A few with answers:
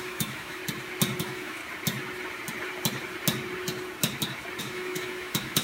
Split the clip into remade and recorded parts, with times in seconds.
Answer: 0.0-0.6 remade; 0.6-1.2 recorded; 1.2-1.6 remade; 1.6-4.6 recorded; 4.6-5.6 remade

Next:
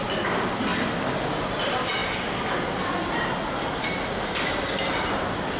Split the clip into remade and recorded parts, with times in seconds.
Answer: 0.0-5.6 recorded

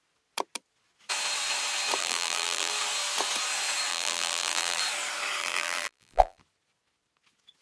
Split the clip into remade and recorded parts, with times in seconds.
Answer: 0.0-2.0 recorded; 2.0-2.7 remade; 2.7-3.9 recorded; 3.9-4.8 remade; 4.8-5.4 recorded; 5.4-6.4 remade; 6.4-7.6 recorded

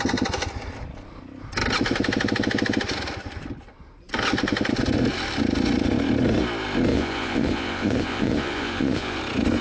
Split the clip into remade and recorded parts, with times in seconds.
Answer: 0.0-6.9 recorded; 6.9-9.2 remade; 9.2-9.6 recorded

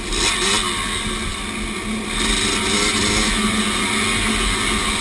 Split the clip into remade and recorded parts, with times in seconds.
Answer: 0.0-5.0 recorded

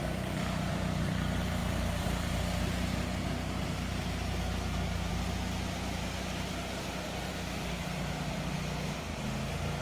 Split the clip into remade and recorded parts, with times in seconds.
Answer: 0.0-1.6 recorded; 1.6-2.4 remade; 2.4-9.8 recorded

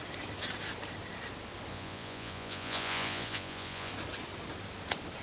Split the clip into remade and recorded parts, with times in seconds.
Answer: 0.0-1.7 recorded; 1.7-3.9 remade; 3.9-5.2 recorded